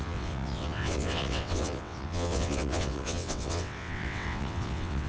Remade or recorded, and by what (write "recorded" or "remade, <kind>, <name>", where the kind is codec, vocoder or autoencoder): remade, vocoder, WaveNeXt